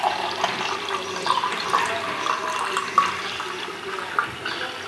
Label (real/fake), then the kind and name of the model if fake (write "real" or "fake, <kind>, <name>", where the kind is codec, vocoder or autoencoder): fake, vocoder, BigVGAN v2